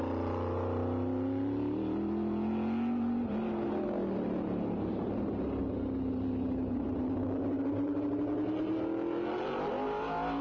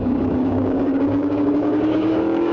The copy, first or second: second